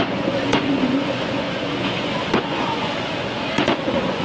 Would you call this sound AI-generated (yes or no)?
yes